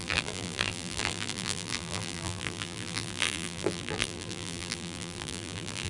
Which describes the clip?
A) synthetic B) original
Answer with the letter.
A